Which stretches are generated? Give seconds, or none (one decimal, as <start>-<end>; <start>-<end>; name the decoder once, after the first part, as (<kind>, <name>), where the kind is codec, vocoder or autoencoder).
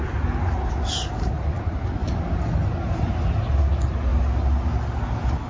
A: none